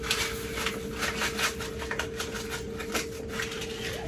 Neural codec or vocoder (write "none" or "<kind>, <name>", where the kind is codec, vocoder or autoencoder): none